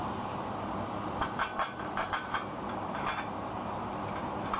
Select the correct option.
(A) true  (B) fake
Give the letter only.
A